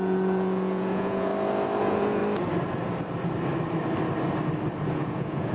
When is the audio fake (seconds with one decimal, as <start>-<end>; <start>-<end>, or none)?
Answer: 0.0-1.3; 1.8-2.2; 4.9-5.5